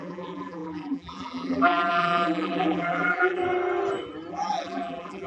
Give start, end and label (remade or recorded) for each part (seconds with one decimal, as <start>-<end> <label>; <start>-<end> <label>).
0.0-3.4 remade; 3.4-4.3 recorded; 4.3-5.3 remade